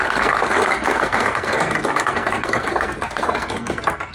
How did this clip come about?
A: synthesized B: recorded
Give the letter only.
A